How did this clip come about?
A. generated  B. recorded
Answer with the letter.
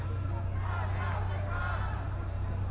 B